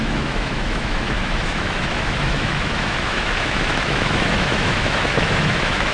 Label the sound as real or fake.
fake